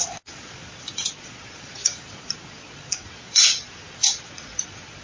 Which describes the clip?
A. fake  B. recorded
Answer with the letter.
A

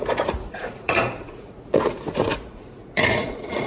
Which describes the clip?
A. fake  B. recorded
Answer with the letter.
A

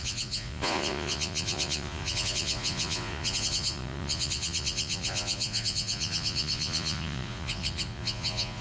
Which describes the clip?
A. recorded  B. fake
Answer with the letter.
B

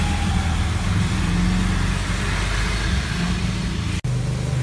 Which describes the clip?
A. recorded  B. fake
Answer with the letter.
A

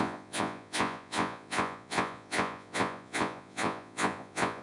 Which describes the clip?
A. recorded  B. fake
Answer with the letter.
B